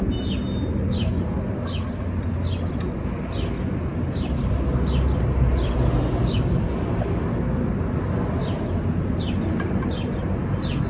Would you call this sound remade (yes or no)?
no